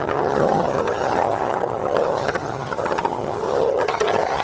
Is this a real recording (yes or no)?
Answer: no